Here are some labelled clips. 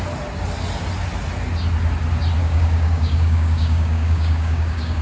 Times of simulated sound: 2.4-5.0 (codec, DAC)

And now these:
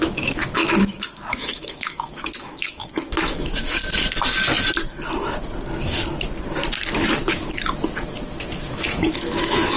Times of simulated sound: 0.0-3.8 (autoencoder, DAC-VAE); 8.7-9.8